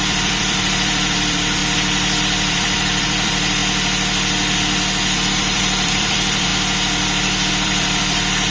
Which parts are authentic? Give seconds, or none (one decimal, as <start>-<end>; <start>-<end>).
1.6-2.2; 3.6-5.3; 6.5-7.5

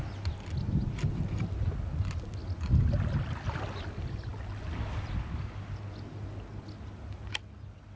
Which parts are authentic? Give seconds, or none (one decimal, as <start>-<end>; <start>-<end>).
0.0-8.0